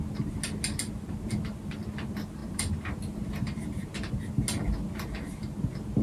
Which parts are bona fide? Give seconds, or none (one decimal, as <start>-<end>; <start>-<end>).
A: 0.0-2.4; 4.3-6.0